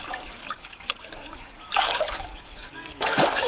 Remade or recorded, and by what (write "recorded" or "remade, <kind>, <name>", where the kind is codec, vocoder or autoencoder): remade, codec, DAC